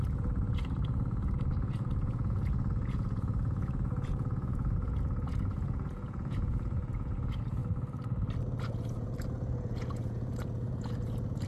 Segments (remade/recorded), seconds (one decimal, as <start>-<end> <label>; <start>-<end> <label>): 0.0-7.6 remade; 7.6-8.6 recorded; 8.6-11.5 remade